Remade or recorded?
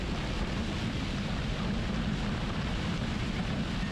recorded